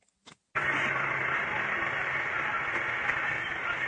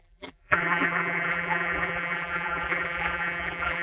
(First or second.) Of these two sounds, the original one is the first